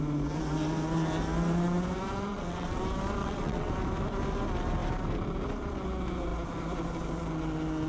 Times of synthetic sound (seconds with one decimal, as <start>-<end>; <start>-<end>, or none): 2.3-2.8; 3.2-3.7